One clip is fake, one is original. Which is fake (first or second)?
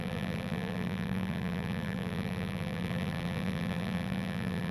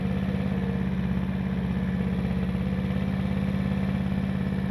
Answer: first